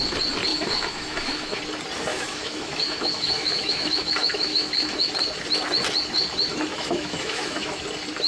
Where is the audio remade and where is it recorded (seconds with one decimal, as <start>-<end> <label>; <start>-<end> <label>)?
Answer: 0.0-0.5 recorded; 0.5-1.6 remade; 1.6-2.1 recorded; 2.1-5.1 remade; 5.1-6.7 recorded; 6.7-7.8 remade; 7.8-8.3 recorded